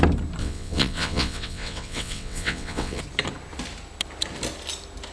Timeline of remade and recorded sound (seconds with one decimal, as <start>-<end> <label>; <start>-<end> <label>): 0.0-0.4 recorded; 0.4-3.0 remade; 3.0-5.1 recorded